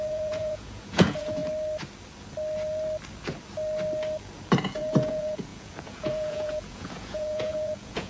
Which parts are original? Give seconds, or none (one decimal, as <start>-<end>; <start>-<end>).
1.4-4.6